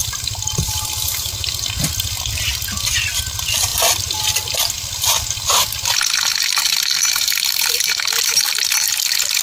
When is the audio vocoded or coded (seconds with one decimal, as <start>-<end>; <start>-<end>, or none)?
none